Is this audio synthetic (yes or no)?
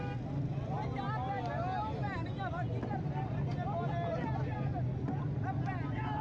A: no